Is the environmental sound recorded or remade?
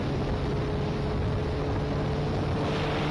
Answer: recorded